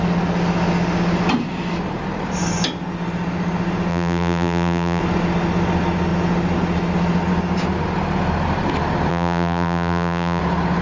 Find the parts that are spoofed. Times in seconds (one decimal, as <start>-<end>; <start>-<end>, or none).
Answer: 3.9-5.0; 9.1-10.4